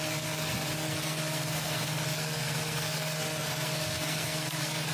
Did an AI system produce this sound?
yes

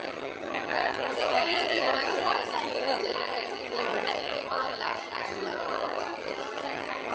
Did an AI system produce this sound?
yes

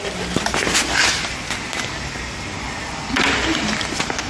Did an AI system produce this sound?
no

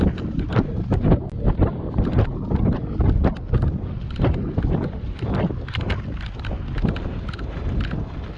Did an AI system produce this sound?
no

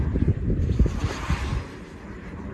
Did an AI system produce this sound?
no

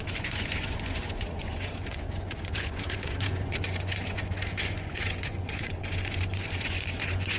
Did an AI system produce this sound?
yes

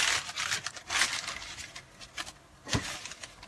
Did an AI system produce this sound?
no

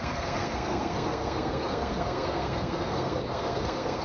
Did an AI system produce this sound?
yes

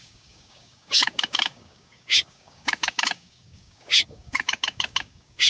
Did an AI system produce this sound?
yes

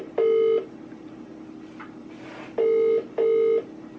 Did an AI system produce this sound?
no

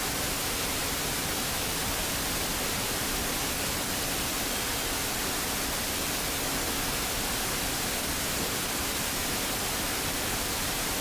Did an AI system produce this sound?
no